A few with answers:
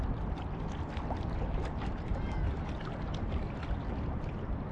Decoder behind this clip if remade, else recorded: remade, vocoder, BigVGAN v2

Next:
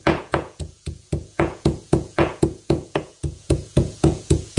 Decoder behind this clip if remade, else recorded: remade, vocoder, Vocos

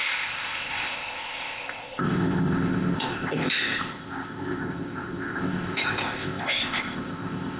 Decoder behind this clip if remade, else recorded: remade, codec, ZipCodec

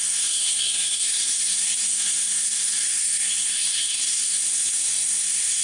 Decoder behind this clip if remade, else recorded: remade, codec, SNAC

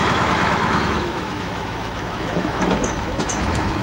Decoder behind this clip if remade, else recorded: remade, autoencoder, DAC-VAE